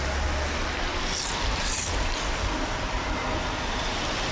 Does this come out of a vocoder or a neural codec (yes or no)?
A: no